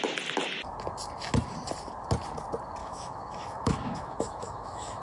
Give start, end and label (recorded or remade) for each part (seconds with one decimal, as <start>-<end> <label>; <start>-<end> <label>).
0.0-2.8 recorded; 2.8-5.0 remade